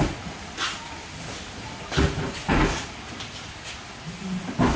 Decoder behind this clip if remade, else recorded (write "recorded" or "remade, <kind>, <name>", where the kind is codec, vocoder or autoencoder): recorded